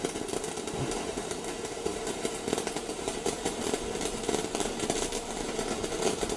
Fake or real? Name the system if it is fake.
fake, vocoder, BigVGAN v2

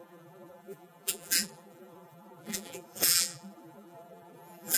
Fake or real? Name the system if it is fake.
fake, vocoder, BigVGAN v2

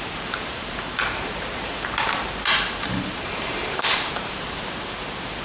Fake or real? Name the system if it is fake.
fake, vocoder, BigVGAN v2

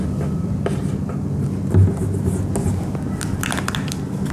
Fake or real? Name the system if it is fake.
real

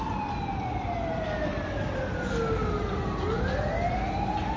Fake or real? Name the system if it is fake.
real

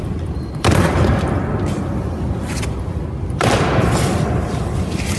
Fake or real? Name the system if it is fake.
fake, vocoder, BigVGAN v2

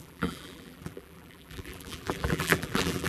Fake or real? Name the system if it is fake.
fake, vocoder, BigVGAN v2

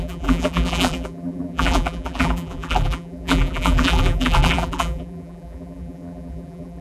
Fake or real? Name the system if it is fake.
fake, vocoder, BigVGAN v2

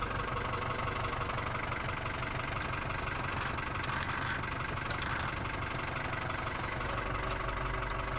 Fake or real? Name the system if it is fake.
real